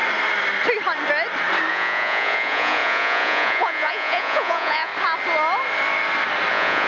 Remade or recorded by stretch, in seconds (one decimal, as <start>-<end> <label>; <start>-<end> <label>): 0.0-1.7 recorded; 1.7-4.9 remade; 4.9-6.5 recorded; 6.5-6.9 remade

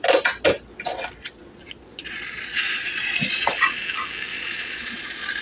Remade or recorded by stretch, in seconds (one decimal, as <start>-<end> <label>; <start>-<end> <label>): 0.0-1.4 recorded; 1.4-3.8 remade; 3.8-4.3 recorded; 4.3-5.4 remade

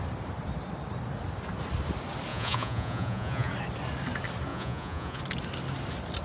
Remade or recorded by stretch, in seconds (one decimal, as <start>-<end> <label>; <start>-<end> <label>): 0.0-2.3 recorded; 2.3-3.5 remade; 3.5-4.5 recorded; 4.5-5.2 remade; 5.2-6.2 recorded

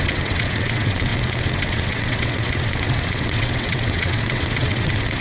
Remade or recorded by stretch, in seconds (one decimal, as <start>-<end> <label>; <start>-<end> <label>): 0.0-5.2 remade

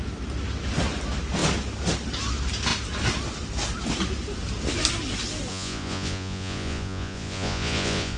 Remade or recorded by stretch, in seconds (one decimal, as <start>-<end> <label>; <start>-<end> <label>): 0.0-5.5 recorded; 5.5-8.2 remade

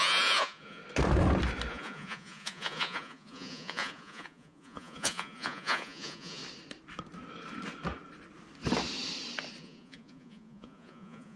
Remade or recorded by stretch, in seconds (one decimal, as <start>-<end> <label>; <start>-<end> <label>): 0.0-0.8 remade; 0.8-1.7 recorded; 1.7-6.4 remade; 6.4-9.6 recorded; 9.6-11.4 remade